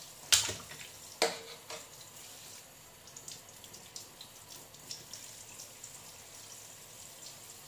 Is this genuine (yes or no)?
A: yes